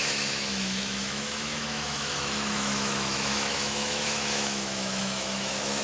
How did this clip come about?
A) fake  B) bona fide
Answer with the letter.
A